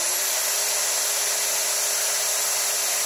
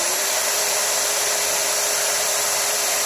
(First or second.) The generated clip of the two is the second